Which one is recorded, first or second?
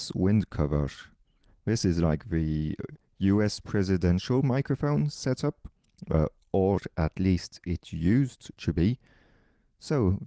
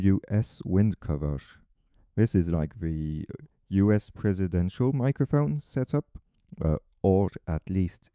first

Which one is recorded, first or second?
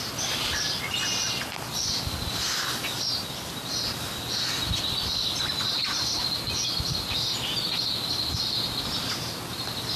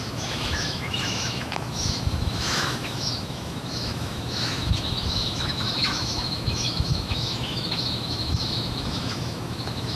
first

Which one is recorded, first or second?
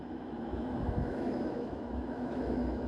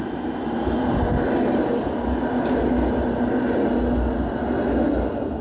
second